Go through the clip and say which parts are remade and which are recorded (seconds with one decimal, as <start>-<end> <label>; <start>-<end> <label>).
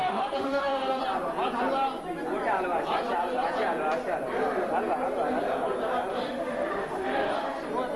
0.0-1.0 remade; 1.0-6.1 recorded; 6.1-7.6 remade; 7.6-8.0 recorded